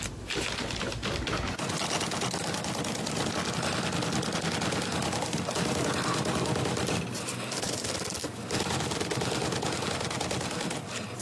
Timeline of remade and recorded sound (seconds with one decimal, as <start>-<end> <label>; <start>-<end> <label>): 0.0-11.2 recorded